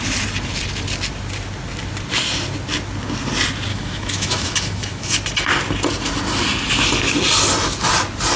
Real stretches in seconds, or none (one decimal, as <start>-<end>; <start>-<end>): 0.0-3.7; 5.1-8.4